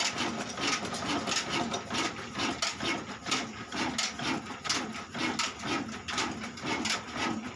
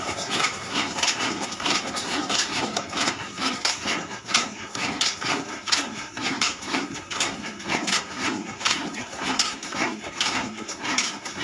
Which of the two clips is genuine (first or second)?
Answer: first